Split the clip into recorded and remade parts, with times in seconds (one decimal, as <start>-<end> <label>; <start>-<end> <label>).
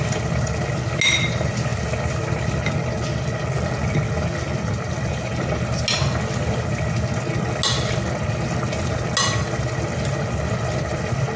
0.0-11.4 recorded